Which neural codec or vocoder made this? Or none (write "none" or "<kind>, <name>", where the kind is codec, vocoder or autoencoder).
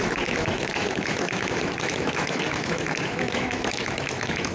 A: autoencoder, DAC-VAE